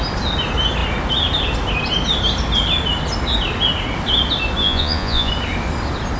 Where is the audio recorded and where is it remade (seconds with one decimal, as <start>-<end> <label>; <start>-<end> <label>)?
0.0-4.6 recorded; 4.6-5.3 remade; 5.3-6.2 recorded